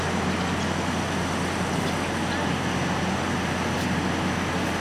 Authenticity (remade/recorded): recorded